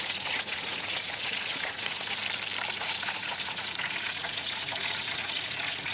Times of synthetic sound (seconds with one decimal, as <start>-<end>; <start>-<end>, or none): 0.0-2.2; 2.7-5.9

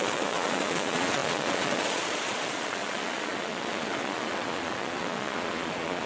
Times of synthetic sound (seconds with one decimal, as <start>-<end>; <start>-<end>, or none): 0.0-6.1

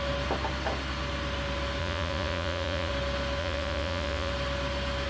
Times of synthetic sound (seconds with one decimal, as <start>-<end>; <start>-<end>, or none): 1.8-2.9; 3.4-4.3